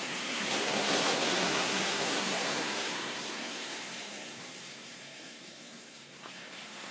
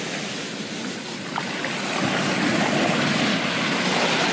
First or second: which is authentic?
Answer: second